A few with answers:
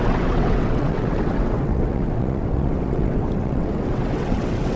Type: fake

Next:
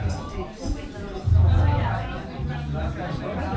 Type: real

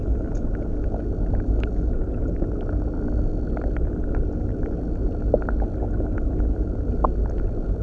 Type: real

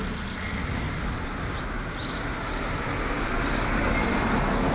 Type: real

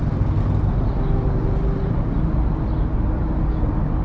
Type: real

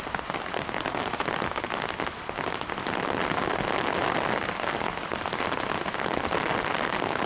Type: real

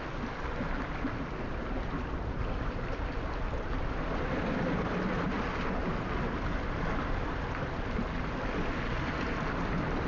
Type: real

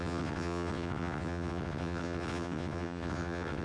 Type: fake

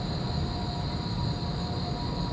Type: real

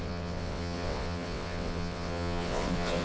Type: fake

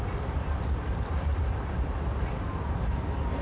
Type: real